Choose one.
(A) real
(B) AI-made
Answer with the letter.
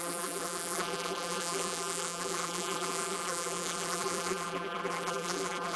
B